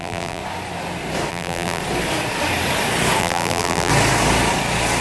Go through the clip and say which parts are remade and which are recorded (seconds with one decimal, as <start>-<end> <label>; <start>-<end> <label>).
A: 0.0-0.4 remade; 0.4-1.3 recorded; 1.3-1.8 remade; 1.8-3.2 recorded; 3.2-3.9 remade; 3.9-5.0 recorded